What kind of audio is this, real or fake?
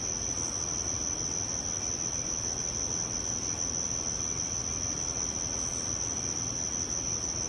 real